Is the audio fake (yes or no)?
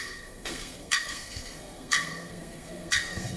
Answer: yes